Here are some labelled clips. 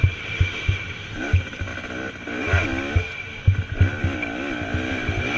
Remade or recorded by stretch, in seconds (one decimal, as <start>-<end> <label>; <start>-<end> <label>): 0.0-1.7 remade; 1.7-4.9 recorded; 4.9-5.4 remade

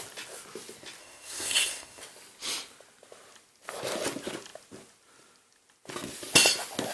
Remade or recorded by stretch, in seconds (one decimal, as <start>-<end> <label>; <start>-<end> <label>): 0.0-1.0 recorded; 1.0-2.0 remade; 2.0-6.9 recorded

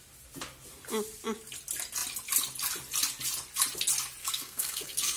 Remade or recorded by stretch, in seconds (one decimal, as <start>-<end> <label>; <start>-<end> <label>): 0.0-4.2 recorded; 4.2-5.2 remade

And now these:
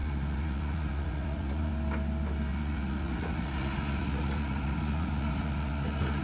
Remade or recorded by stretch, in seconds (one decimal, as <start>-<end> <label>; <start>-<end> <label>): 0.0-1.7 remade; 1.7-2.5 recorded; 2.5-6.2 remade